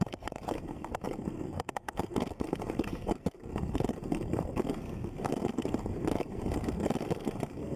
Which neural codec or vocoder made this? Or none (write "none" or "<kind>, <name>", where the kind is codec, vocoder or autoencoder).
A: codec, SNAC